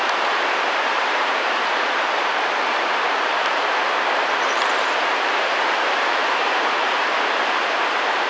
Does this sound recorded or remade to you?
remade